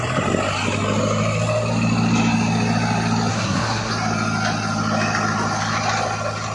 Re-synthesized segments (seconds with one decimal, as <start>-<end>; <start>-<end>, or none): 3.3-3.9